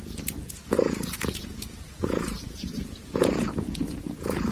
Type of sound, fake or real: fake